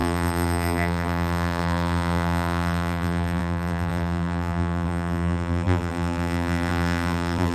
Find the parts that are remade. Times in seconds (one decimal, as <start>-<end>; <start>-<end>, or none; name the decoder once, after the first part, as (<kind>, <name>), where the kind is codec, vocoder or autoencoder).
0.0-7.5 (vocoder, BigVGAN v2)